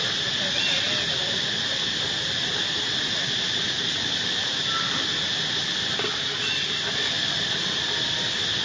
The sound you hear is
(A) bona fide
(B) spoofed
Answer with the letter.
A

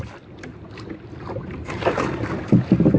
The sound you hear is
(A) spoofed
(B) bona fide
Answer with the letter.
B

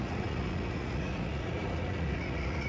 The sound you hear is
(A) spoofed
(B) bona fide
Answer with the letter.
A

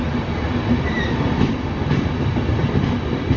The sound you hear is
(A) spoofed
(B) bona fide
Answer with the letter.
B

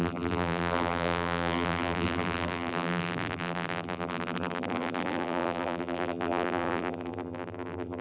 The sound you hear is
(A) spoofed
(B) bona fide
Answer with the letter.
A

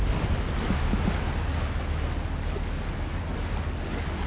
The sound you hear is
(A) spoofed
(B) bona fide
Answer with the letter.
B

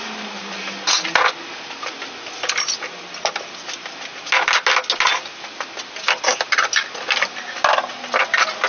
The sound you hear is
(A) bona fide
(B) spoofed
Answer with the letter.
A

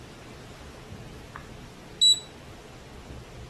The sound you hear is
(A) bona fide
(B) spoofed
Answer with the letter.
A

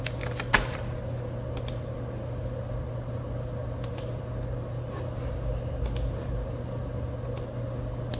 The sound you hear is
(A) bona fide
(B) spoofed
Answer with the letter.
A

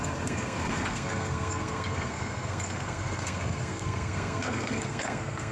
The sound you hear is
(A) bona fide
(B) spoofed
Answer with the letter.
B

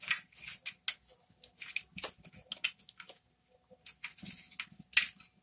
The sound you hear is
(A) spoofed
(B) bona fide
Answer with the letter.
B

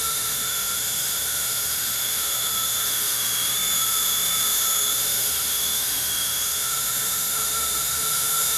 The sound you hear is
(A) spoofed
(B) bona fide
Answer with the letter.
A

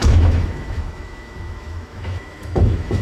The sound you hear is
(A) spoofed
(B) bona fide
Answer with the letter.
A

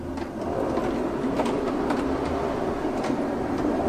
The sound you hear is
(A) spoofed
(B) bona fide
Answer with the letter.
B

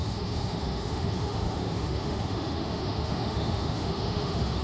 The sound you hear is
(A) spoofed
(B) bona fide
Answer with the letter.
A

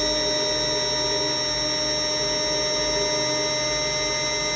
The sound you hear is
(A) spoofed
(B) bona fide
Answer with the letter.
B